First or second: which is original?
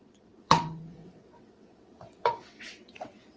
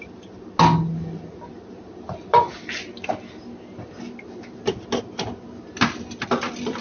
second